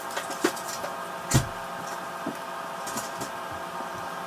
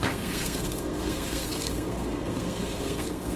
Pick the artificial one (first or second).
second